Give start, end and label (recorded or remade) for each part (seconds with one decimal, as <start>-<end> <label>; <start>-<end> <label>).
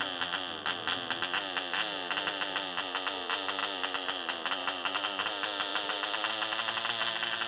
0.0-3.6 recorded; 3.6-5.3 remade; 5.3-5.7 recorded; 5.7-6.3 remade; 6.3-7.5 recorded